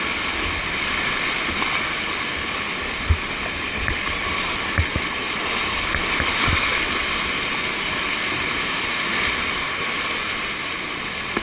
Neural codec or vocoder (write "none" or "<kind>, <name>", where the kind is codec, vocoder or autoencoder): none